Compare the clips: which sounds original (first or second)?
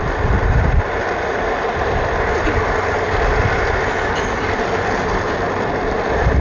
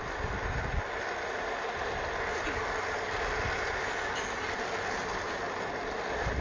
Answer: second